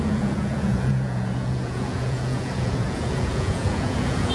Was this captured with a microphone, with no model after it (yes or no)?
no